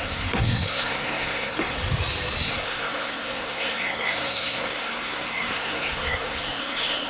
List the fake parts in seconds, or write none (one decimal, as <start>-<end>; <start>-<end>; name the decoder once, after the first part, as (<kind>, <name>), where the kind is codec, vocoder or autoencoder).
0.0-1.8 (codec, SNAC); 2.4-7.1